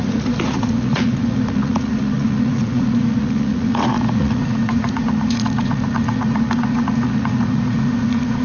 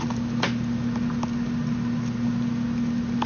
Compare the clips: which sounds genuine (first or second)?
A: second